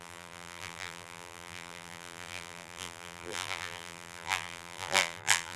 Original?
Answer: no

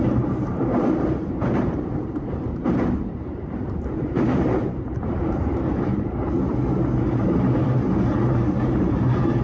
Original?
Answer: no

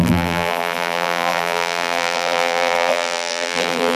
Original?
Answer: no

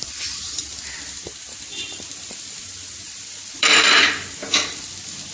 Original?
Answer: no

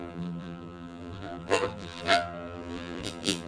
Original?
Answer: no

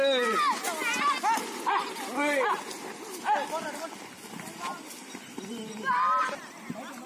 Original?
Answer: yes